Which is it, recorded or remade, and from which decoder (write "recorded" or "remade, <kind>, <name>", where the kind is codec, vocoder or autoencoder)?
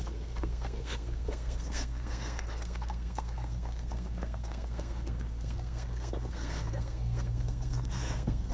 remade, codec, SNAC